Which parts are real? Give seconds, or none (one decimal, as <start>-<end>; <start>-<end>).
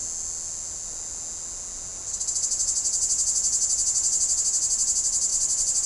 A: 0.0-5.3